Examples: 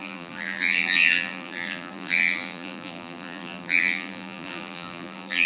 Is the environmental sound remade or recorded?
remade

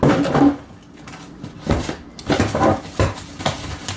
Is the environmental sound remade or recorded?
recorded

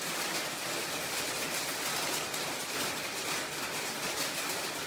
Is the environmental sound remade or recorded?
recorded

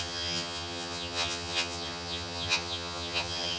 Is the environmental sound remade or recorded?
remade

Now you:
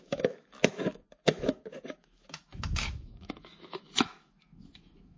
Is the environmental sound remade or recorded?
remade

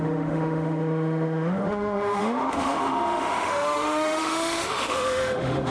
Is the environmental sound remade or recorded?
remade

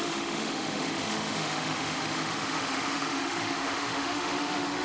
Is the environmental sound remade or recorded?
remade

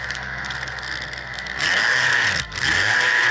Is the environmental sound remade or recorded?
remade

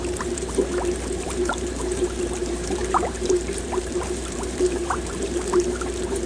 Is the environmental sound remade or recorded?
remade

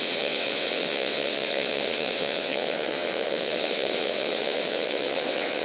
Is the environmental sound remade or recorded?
remade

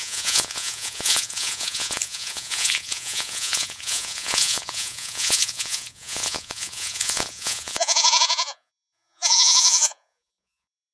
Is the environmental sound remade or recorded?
remade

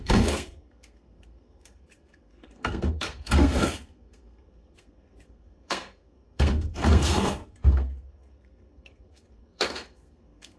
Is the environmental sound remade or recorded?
remade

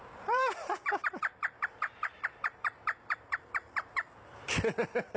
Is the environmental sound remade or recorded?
remade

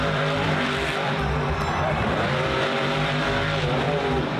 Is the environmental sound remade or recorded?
remade